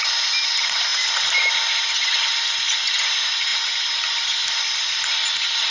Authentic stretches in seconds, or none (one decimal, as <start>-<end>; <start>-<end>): 0.0-5.7